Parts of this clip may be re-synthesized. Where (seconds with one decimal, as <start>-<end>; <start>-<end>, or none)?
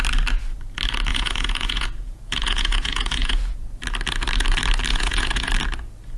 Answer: 1.1-3.7; 4.9-5.5